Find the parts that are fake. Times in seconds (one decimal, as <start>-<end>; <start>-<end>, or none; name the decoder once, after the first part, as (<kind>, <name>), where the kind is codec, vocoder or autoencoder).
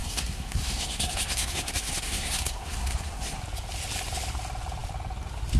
0.0-3.4 (codec, SNAC)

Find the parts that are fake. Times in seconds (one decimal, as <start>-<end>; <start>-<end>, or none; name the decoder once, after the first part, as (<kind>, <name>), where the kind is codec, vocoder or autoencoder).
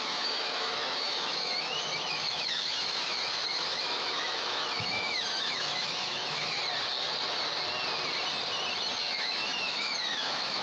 0.0-6.6 (autoencoder, DAC-VAE); 9.0-10.6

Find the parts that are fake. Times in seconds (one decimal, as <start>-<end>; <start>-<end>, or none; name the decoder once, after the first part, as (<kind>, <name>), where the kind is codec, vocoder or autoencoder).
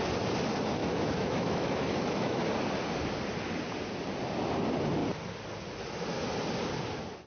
0.8-2.4 (autoencoder, DAC-VAE)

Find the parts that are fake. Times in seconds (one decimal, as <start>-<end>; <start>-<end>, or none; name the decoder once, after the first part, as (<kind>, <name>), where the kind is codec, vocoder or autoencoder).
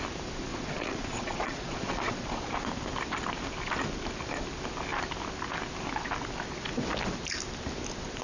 0.5-2.5 (vocoder, Vocos)